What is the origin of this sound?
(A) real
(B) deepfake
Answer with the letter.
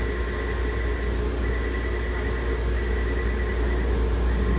A